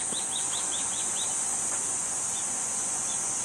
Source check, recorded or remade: remade